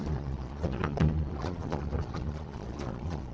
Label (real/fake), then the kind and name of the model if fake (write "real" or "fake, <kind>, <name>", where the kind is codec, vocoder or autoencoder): fake, vocoder, Vocos